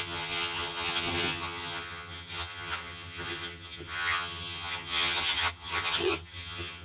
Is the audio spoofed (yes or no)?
yes